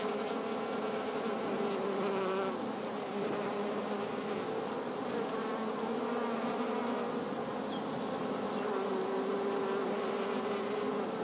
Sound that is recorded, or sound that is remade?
recorded